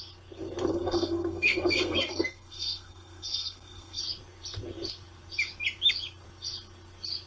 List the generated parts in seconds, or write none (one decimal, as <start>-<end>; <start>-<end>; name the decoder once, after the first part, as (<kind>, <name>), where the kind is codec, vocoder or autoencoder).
0.7-4.0 (codec, SNAC)